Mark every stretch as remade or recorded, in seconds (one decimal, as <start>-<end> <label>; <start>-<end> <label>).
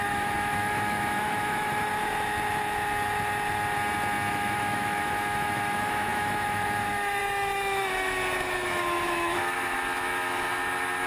0.0-1.9 remade; 1.9-4.3 recorded; 4.3-11.1 remade